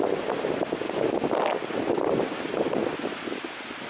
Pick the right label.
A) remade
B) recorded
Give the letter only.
B